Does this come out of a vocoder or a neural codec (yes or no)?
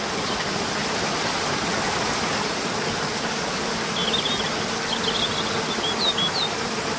no